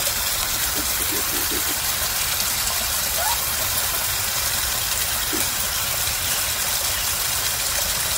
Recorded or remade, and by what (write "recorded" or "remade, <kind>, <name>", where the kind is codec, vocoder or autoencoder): recorded